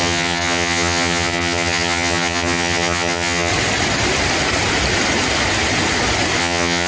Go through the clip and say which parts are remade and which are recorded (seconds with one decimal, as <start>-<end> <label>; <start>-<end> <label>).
0.0-3.5 remade; 3.5-6.4 recorded; 6.4-6.9 remade